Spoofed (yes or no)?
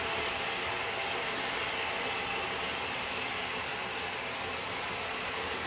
no